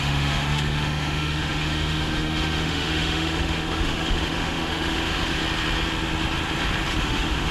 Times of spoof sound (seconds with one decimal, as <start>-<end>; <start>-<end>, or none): 0.0-5.4; 7.0-7.5